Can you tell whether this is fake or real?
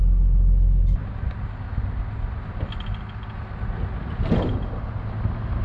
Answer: real